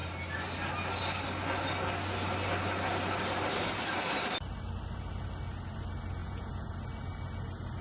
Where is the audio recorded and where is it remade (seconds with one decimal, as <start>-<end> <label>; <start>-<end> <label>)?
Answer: 0.0-6.2 recorded; 6.2-6.7 remade; 6.7-7.8 recorded